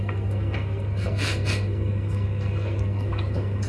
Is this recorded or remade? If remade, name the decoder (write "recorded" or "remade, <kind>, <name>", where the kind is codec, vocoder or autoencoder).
remade, codec, SNAC